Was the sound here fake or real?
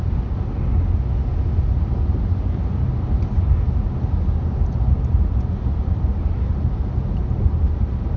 real